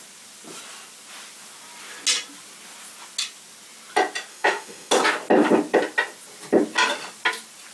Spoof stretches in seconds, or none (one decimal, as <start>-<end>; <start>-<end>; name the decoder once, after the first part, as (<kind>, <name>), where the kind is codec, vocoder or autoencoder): 4.3-4.9 (autoencoder, DAC-VAE)